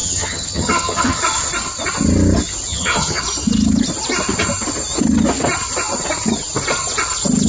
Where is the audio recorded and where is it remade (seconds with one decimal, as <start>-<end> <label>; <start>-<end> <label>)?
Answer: 0.0-1.2 remade; 1.2-2.7 recorded; 2.7-3.2 remade; 3.2-7.5 recorded

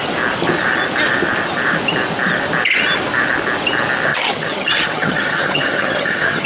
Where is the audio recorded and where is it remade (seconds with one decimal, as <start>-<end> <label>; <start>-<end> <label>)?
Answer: 0.0-4.1 recorded; 4.1-6.5 remade

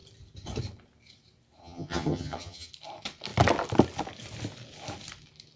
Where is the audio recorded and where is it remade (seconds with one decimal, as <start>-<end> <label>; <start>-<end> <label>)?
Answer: 0.0-1.6 recorded; 1.6-2.7 remade; 2.7-5.6 recorded

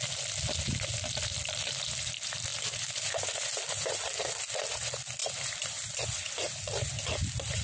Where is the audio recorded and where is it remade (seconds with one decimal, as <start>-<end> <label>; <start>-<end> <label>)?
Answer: 0.0-7.6 recorded

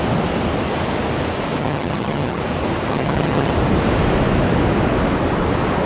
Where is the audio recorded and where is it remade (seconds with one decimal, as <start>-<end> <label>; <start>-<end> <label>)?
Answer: 0.0-1.6 recorded; 1.6-2.4 remade; 2.4-2.9 recorded; 2.9-3.5 remade; 3.5-5.9 recorded

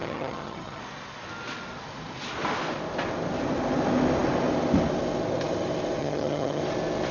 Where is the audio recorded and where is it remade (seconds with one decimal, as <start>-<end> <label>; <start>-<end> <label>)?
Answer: 0.0-0.8 remade; 0.8-6.0 recorded; 6.0-6.6 remade; 6.6-7.1 recorded

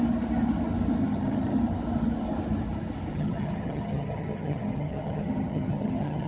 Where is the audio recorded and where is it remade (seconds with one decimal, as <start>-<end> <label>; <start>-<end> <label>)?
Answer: 0.0-1.0 recorded; 1.0-1.6 remade; 1.6-3.1 recorded; 3.1-6.3 remade

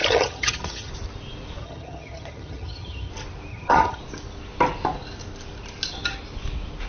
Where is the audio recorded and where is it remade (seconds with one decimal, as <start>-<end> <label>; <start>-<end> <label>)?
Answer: 0.0-0.9 remade; 0.9-1.6 recorded; 1.6-3.1 remade; 3.1-3.5 recorded; 3.5-4.0 remade; 4.0-6.9 recorded